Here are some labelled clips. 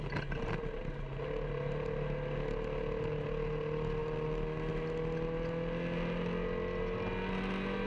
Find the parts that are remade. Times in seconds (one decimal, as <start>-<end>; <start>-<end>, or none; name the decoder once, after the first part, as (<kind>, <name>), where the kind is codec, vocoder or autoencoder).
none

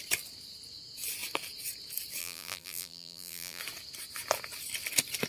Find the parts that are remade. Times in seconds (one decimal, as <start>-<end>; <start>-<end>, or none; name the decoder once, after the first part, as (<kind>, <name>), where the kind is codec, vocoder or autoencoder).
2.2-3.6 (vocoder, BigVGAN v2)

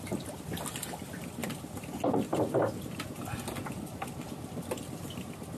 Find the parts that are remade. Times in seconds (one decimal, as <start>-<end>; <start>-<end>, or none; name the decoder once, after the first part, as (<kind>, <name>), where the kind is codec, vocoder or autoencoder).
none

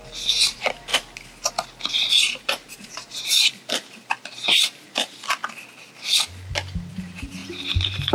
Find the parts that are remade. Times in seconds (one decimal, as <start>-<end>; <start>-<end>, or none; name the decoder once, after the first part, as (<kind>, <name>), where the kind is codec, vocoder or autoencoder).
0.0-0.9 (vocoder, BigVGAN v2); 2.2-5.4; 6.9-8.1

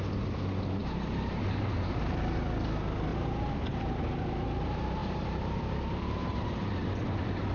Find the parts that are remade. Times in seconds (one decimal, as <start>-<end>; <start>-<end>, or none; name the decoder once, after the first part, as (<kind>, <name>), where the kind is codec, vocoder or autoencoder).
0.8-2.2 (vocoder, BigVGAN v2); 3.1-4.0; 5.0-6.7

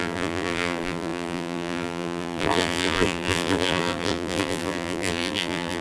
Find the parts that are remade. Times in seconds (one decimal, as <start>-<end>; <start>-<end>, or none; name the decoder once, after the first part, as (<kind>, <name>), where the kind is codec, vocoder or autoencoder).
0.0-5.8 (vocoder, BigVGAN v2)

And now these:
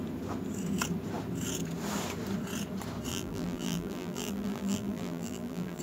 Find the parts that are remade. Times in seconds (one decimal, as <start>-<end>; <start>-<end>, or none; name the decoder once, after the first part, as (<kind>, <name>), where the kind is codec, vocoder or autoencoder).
3.1-5.8 (vocoder, BigVGAN v2)